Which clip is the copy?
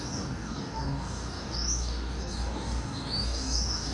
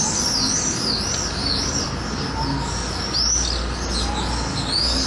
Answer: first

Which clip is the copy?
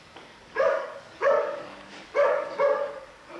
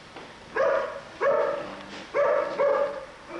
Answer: first